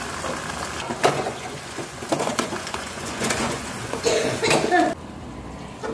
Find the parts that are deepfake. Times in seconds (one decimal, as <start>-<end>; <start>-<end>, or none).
1.0-4.5